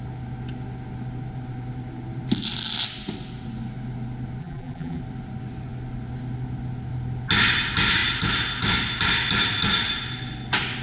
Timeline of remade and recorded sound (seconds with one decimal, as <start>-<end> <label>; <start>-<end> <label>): 0.0-4.4 recorded; 4.4-5.0 remade; 5.0-10.8 recorded